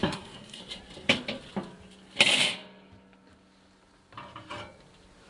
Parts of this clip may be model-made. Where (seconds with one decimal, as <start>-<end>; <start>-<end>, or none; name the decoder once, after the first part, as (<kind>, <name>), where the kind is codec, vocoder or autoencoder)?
0.0-0.6 (codec, SNAC)